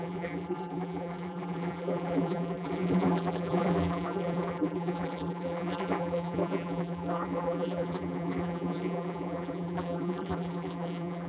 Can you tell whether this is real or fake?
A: fake